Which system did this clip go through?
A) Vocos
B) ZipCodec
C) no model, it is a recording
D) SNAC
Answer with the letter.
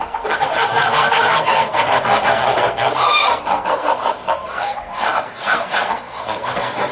D